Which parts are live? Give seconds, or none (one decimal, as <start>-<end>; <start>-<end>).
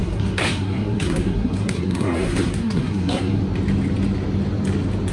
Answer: 3.4-5.1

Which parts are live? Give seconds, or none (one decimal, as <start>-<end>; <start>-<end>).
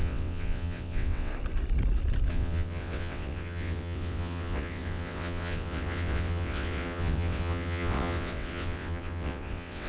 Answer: 1.3-2.3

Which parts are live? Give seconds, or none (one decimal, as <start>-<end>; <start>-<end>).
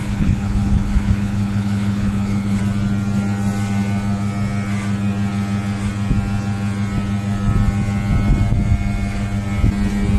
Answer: 2.6-10.2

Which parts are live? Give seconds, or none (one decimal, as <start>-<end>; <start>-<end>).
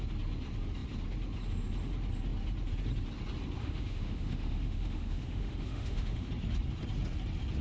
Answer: 0.0-3.6; 6.3-7.6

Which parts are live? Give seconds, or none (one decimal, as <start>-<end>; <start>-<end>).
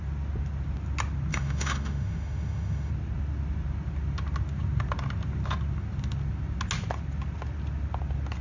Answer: 0.0-1.3; 2.9-8.4